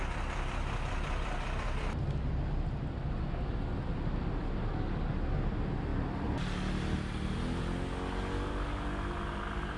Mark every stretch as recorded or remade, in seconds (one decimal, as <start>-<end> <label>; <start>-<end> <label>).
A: 0.0-9.8 recorded